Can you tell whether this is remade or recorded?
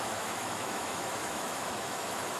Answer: remade